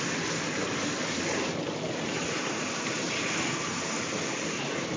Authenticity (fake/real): real